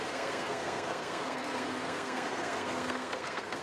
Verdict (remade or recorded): remade